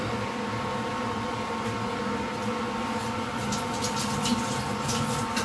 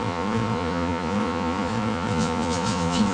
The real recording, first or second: first